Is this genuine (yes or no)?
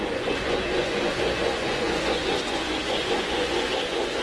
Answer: no